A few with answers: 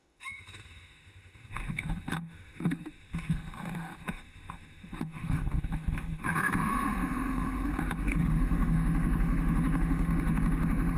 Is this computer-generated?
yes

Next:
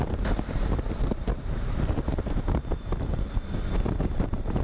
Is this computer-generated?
yes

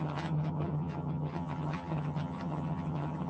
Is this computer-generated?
yes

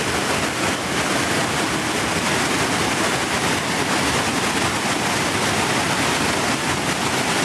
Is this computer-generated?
no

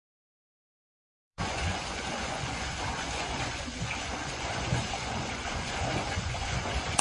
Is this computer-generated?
yes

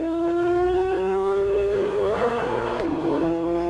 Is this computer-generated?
yes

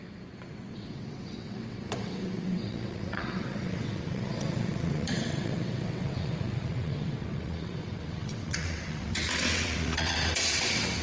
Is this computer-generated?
yes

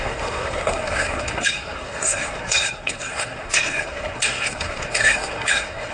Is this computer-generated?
yes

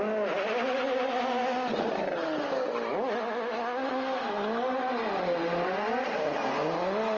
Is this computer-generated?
no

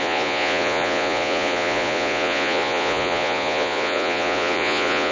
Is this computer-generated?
yes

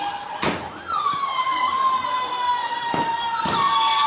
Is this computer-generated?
no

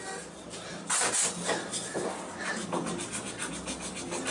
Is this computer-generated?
no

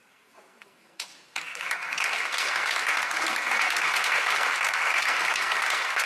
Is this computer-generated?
yes